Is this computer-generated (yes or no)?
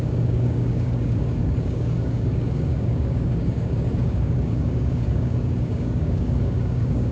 yes